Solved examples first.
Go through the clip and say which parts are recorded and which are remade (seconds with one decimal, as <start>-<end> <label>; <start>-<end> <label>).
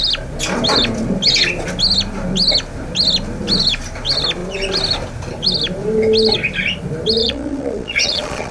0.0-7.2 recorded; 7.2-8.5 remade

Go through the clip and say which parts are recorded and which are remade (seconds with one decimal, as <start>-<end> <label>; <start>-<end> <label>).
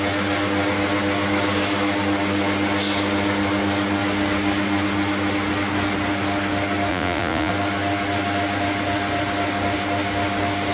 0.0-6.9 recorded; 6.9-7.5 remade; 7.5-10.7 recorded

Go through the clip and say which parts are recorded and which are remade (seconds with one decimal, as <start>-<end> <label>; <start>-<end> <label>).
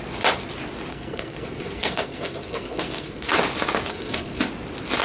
0.0-0.9 recorded; 0.9-3.3 remade; 3.3-3.9 recorded; 3.9-4.4 remade; 4.4-5.0 recorded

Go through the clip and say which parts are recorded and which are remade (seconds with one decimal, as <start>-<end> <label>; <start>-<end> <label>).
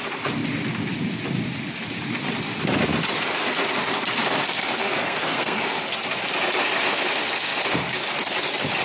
0.0-4.8 recorded; 4.8-5.8 remade; 5.8-8.8 recorded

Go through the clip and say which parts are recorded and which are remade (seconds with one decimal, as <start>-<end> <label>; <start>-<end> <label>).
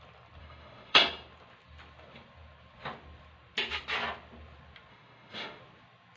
0.0-0.4 recorded; 0.4-1.0 remade; 1.0-4.9 recorded; 4.9-5.6 remade; 5.6-6.2 recorded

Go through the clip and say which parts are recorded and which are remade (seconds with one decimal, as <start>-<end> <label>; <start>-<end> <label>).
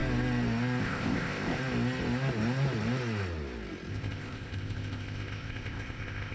0.0-0.8 recorded; 0.8-1.6 remade; 1.6-3.9 recorded; 3.9-6.3 remade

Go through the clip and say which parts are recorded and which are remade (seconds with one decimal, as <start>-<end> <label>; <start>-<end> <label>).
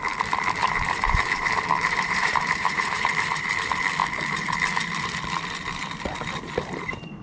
0.0-0.6 recorded; 0.6-3.5 remade; 3.5-7.2 recorded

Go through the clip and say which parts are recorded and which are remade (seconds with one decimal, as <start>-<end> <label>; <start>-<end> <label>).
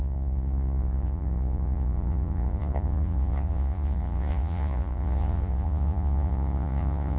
0.0-7.2 remade